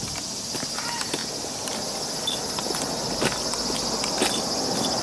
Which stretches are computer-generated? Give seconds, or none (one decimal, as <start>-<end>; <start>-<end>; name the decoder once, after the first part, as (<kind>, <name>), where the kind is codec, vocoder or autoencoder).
none